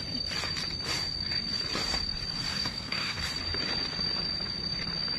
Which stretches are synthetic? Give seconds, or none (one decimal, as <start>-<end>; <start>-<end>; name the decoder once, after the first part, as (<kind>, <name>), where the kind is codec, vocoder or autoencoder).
2.5-3.2 (codec, SNAC)